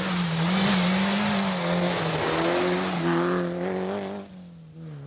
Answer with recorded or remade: recorded